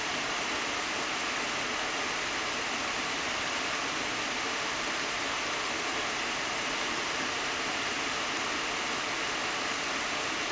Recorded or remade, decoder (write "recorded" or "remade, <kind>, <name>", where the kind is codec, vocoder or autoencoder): recorded